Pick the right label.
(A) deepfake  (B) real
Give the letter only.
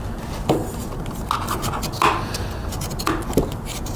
B